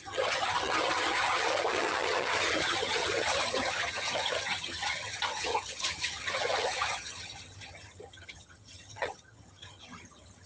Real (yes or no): no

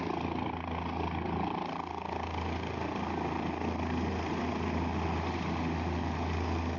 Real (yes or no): yes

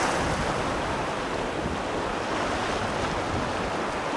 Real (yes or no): yes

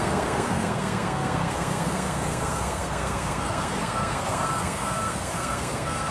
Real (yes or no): no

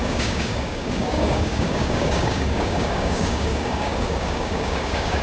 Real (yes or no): no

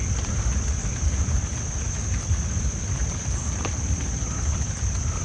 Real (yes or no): yes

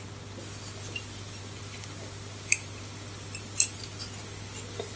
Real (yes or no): yes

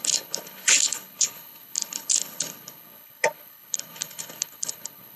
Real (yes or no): no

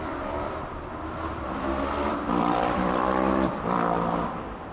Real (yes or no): no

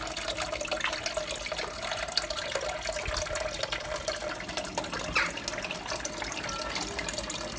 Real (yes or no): yes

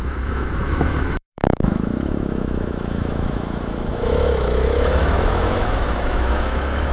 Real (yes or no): no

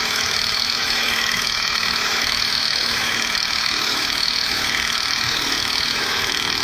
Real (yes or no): no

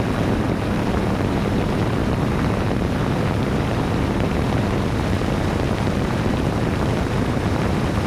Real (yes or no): no